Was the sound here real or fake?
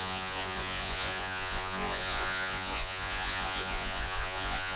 fake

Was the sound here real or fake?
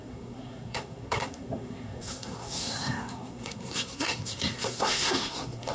fake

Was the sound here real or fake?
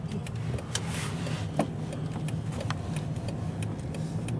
real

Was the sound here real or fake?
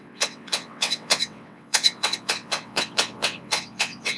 fake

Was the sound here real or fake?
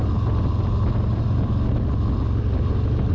real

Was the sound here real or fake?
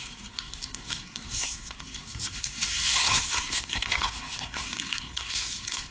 fake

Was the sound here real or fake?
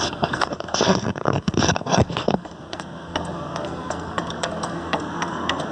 fake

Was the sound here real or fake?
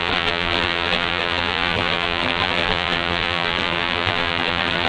fake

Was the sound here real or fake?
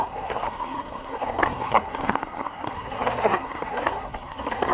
fake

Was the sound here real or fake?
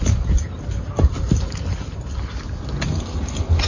real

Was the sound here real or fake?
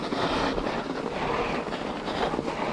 real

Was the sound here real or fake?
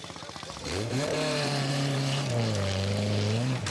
fake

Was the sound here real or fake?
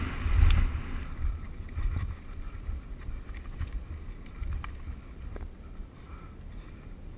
real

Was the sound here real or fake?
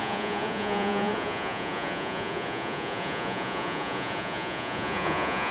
fake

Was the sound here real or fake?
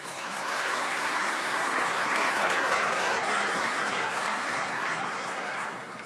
fake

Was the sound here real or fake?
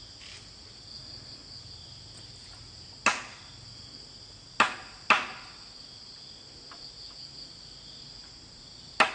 real